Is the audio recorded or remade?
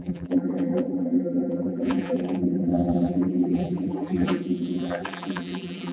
remade